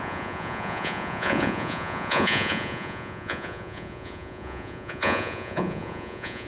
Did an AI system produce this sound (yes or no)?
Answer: yes